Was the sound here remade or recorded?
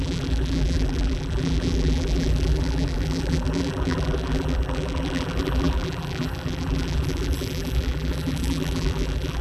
remade